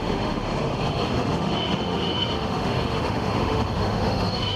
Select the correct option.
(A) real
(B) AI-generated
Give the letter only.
B